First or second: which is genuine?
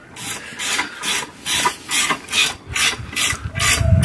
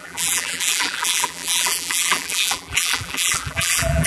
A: first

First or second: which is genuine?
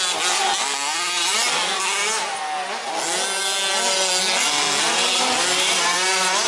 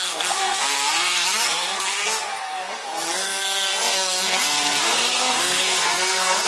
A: first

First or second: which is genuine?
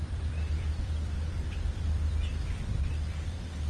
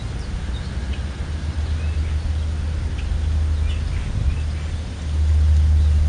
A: second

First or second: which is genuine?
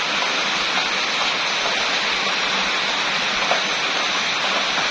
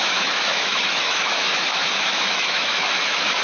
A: first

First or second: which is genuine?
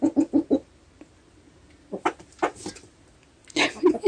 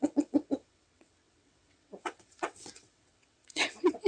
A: first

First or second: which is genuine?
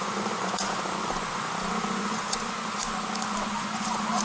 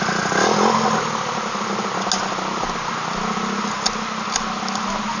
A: second